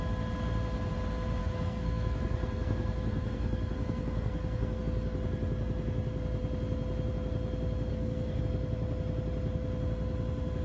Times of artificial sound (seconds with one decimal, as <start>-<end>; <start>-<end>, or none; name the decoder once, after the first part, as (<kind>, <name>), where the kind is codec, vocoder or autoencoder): 1.4-4.8 (codec, SNAC); 7.9-8.4